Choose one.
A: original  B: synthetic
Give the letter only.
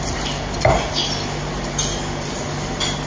A